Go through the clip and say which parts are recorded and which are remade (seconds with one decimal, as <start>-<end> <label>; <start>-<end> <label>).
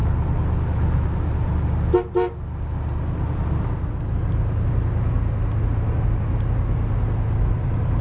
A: 0.0-8.0 recorded